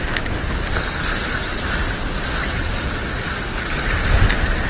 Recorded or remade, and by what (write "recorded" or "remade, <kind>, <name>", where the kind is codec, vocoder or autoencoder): recorded